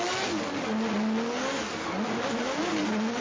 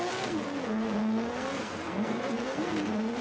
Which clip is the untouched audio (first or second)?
first